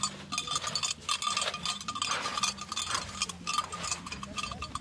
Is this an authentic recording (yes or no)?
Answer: yes